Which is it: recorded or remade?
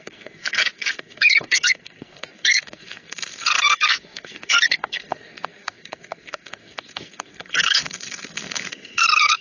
remade